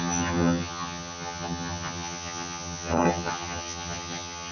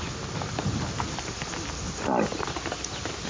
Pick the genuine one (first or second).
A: second